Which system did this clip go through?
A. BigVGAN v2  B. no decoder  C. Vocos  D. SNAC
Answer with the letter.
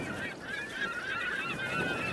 B